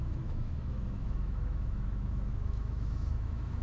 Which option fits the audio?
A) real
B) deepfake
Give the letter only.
B